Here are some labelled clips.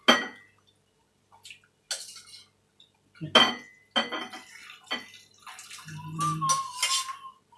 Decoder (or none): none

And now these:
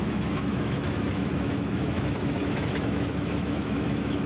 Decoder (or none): autoencoder, DAC-VAE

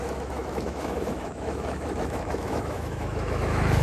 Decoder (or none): autoencoder, DAC-VAE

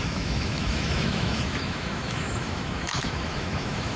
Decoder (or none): autoencoder, DAC-VAE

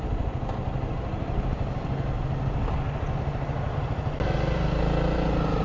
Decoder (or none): none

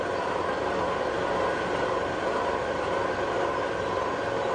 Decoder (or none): none